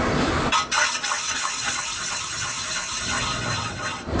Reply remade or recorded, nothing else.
recorded